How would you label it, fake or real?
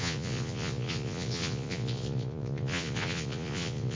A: fake